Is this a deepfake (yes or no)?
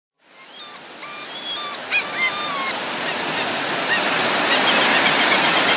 no